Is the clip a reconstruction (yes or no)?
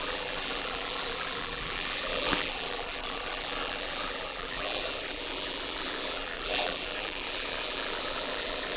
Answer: yes